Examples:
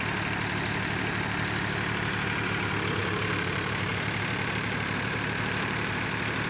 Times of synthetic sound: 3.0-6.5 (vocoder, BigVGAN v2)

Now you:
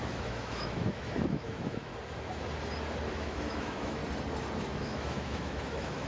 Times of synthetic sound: 0.0-1.9 (autoencoder, DAC-VAE); 3.1-4.0; 4.6-6.1

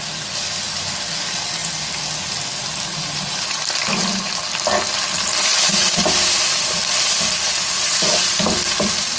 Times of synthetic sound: none

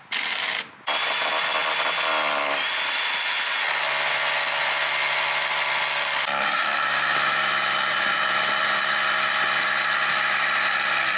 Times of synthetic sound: none